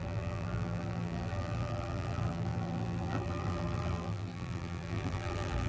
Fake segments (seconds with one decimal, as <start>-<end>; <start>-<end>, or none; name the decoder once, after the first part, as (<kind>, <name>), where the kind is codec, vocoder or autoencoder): 0.0-5.7 (vocoder, BigVGAN v2)